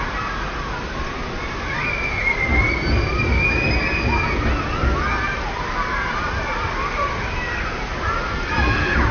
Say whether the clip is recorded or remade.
recorded